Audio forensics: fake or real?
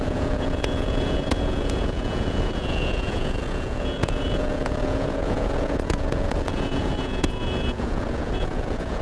fake